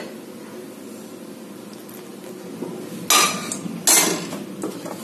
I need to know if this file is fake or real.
real